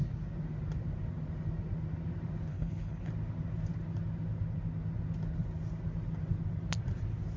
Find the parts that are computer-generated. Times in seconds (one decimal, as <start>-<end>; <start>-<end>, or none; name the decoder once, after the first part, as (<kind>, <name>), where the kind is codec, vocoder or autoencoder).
2.5-3.1 (codec, HILCodec)